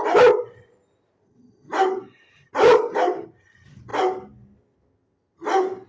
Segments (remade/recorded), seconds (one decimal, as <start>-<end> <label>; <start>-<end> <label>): 0.0-3.9 remade; 3.9-5.9 recorded